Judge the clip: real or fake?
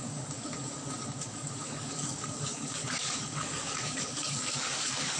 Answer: fake